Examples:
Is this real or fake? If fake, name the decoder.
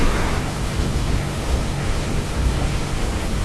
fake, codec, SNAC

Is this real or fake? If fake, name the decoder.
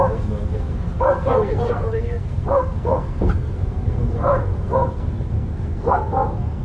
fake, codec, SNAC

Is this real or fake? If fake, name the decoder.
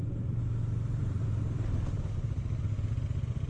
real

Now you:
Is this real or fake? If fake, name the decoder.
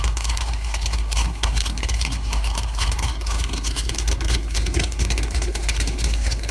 fake, codec, SNAC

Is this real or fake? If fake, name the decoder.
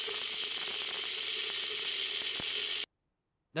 real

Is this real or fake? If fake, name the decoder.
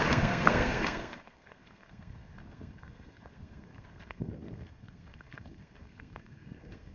fake, codec, SNAC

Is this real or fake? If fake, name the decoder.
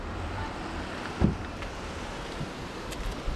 real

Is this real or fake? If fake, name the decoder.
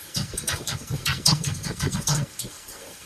fake, codec, SNAC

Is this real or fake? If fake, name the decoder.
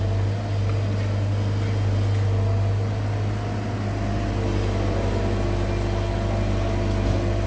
real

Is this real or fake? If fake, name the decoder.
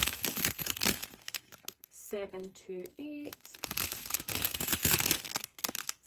fake, codec, SNAC